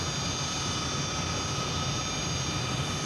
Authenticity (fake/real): real